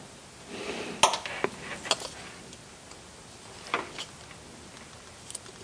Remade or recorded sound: recorded